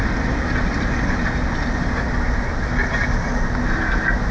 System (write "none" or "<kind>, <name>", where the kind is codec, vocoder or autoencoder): none